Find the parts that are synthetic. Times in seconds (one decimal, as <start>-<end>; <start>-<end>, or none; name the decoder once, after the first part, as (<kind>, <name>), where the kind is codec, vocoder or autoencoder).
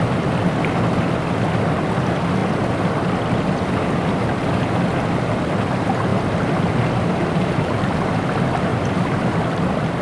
6.1-8.1 (vocoder, BigVGAN v2)